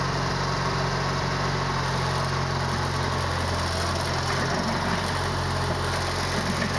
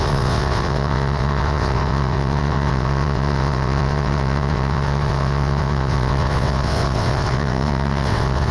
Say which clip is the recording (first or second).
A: first